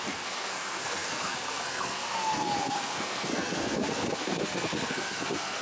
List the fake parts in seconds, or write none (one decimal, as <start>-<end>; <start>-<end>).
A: 0.0-5.6